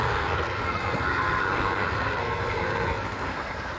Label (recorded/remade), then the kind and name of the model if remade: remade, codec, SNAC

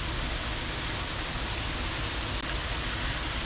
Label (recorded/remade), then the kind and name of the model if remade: recorded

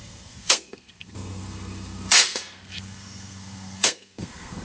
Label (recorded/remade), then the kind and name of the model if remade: remade, codec, SNAC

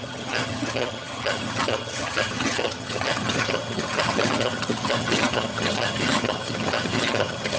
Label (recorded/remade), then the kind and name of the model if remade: remade, vocoder, HiFi-GAN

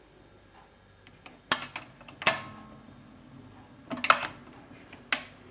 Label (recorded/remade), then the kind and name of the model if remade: recorded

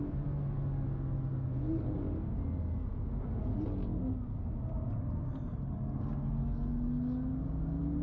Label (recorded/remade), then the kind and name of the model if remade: recorded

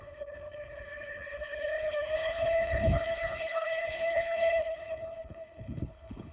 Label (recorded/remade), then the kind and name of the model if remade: remade, codec, HILCodec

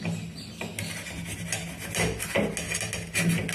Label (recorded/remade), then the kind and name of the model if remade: recorded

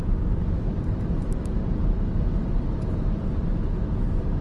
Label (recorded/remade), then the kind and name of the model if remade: recorded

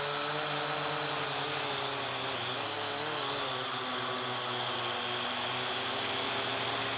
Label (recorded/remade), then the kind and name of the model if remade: recorded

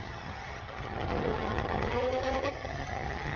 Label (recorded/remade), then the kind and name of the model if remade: remade, vocoder, HiFi-GAN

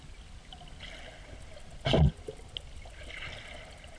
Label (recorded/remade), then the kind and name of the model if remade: recorded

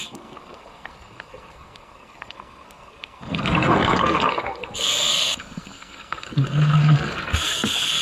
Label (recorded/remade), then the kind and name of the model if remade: remade, codec, SNAC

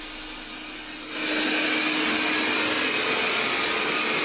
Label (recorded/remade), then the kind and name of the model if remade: recorded